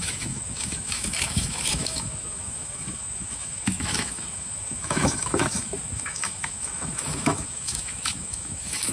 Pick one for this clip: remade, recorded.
remade